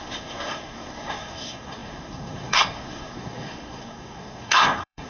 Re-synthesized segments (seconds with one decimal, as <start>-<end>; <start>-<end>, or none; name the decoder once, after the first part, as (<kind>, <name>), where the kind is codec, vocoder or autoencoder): 0.0-5.1 (codec, SNAC)